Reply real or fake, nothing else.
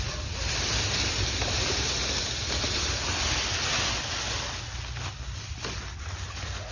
real